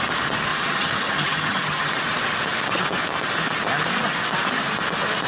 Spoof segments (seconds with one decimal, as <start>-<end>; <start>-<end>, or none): 0.5-1.9